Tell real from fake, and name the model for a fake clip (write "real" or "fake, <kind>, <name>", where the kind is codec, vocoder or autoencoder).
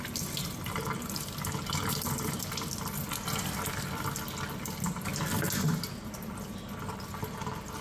real